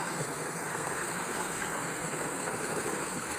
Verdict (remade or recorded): remade